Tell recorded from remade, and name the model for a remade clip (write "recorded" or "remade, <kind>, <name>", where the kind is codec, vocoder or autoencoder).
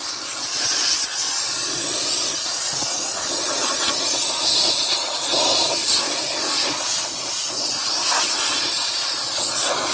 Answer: remade, vocoder, Vocos